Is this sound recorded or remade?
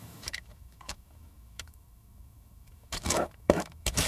remade